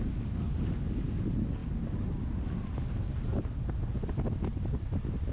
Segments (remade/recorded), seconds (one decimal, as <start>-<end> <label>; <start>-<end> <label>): 0.0-5.3 recorded